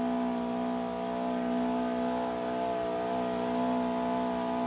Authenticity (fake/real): real